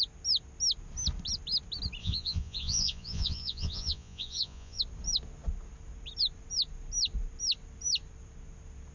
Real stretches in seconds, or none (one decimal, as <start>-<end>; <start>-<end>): 0.0-2.0; 4.8-8.9